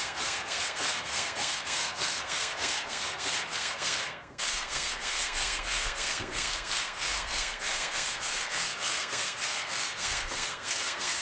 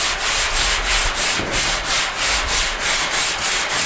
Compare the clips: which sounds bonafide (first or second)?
second